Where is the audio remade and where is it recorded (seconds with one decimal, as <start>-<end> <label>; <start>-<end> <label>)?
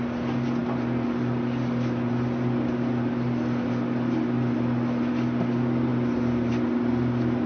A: 0.0-7.5 recorded